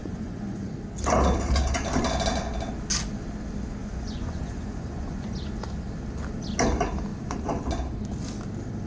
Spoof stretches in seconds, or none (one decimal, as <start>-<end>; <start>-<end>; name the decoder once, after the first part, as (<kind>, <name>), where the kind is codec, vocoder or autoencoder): 0.0-0.7 (vocoder, Vocos); 3.8-5.5